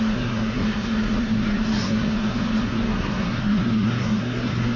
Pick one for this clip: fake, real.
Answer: fake